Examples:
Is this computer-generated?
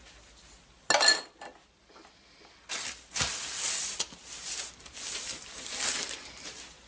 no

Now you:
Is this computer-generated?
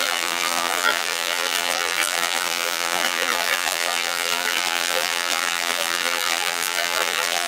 yes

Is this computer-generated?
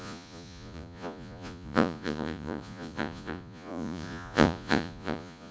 yes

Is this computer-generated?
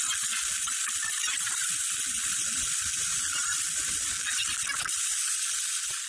no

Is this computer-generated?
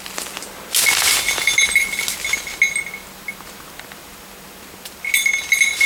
no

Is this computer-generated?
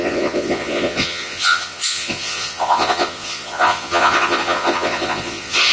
yes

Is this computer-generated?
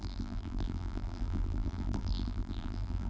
yes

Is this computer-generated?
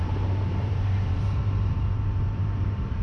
yes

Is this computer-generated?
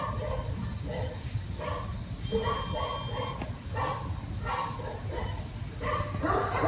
no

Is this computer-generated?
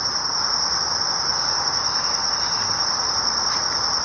no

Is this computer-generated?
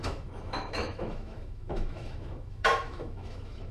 yes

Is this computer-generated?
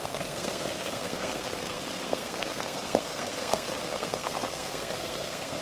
yes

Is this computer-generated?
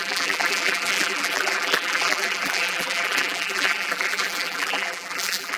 yes